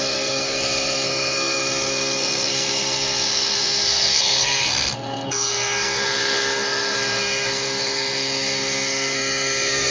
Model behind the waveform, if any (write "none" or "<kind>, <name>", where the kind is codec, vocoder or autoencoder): codec, SNAC